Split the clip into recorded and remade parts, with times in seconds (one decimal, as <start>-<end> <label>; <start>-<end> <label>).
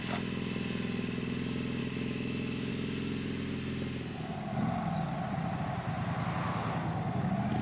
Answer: 0.0-1.8 recorded; 1.8-2.7 remade; 2.7-7.6 recorded